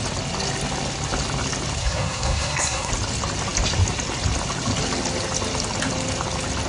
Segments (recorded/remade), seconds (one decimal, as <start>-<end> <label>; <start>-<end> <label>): 0.0-1.8 recorded; 1.8-2.9 remade; 2.9-6.7 recorded